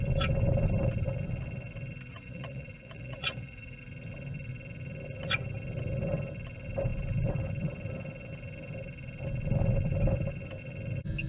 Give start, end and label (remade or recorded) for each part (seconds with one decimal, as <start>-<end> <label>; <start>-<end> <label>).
0.0-2.1 recorded; 2.1-3.8 remade; 3.8-11.3 recorded